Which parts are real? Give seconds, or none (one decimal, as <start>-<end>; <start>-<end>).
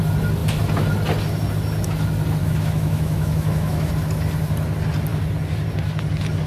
0.0-2.4; 3.9-6.5